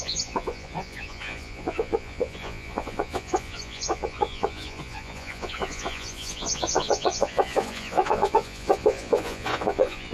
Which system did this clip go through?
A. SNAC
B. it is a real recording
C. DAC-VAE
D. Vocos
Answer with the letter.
D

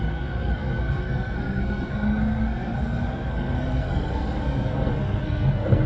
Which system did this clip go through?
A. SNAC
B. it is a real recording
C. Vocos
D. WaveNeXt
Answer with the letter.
A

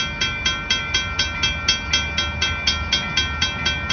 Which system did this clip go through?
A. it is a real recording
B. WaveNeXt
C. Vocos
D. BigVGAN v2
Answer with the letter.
A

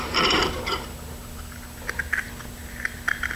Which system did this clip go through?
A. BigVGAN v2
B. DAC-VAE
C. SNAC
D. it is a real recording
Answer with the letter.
D